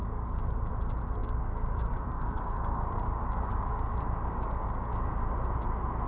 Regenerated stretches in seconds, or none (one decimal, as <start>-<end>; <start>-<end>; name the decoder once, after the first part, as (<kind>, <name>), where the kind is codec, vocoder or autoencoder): 0.0-0.7 (codec, DAC); 1.2-4.9